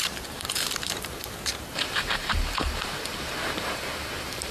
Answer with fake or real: fake